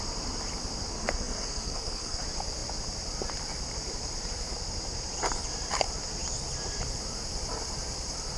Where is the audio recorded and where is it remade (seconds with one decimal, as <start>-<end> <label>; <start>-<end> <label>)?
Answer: 0.0-0.9 recorded; 0.9-2.2 remade; 2.2-8.4 recorded